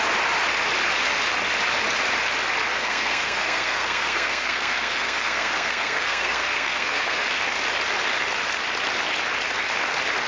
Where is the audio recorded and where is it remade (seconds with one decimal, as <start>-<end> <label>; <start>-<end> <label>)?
0.0-2.7 recorded; 2.7-7.2 remade; 7.2-10.3 recorded